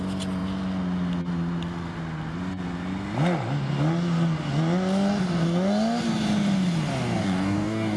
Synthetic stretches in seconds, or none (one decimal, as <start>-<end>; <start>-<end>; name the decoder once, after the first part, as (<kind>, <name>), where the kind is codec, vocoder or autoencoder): 7.2-8.0 (codec, DAC)